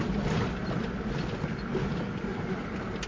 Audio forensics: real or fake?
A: real